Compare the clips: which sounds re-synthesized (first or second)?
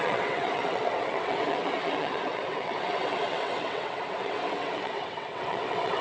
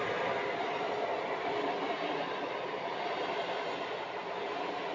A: first